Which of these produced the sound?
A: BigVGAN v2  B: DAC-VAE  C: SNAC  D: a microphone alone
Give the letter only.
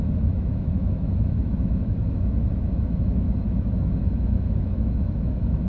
B